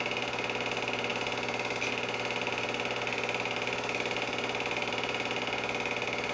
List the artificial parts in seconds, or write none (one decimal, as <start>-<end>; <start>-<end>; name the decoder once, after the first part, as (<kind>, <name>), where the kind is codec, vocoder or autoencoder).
none